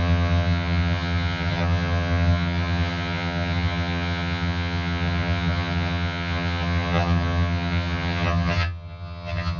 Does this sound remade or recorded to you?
remade